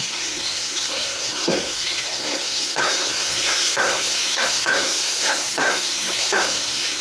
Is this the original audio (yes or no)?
no